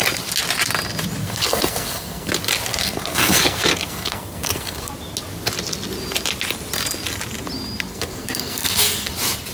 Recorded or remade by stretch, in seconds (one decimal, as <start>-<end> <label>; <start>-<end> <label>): 0.0-1.2 recorded; 1.2-2.3 remade; 2.3-2.7 recorded; 2.7-4.9 remade; 4.9-7.9 recorded; 7.9-9.1 remade; 9.1-9.5 recorded

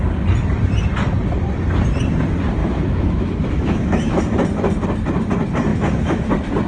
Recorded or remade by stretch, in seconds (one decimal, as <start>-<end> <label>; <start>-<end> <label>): 0.0-2.6 recorded; 2.6-4.2 remade; 4.2-5.7 recorded; 5.7-6.3 remade; 6.3-6.7 recorded

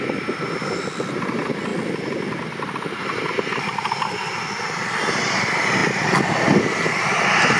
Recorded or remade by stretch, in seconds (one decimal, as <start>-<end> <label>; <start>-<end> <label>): 0.0-5.8 recorded; 5.8-6.6 remade; 6.6-7.6 recorded

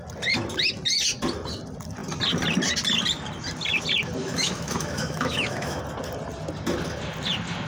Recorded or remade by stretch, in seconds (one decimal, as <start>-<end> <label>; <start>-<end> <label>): 0.0-4.2 recorded; 4.2-5.8 remade; 5.8-7.7 recorded

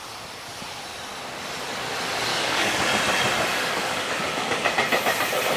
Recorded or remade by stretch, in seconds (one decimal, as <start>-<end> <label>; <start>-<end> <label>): 0.0-2.3 recorded; 2.3-2.9 remade; 2.9-3.5 recorded; 3.5-4.7 remade; 4.7-5.6 recorded

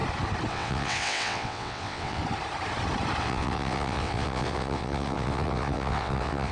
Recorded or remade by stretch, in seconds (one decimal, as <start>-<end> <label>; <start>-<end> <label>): 0.0-0.5 recorded; 0.5-2.2 remade; 2.2-3.2 recorded; 3.2-6.5 remade

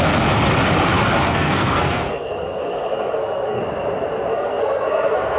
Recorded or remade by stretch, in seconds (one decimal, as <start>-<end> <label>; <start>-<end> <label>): 0.0-1.3 recorded; 1.3-3.6 remade; 3.6-4.3 recorded; 4.3-5.4 remade